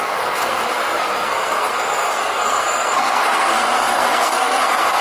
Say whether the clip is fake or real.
fake